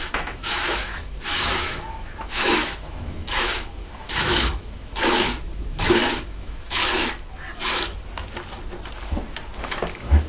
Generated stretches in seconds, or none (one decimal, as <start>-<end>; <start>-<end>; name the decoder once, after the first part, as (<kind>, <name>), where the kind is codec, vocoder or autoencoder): 0.0-6.8 (autoencoder, DAC-VAE); 9.6-10.3